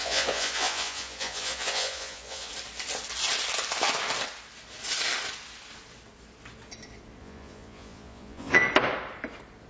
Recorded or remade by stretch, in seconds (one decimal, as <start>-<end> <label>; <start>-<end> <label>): 0.0-2.5 remade; 2.5-7.2 recorded; 7.2-8.6 remade; 8.6-9.7 recorded